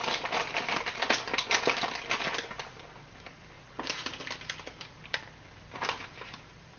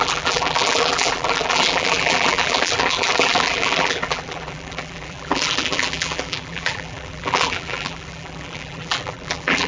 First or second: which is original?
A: first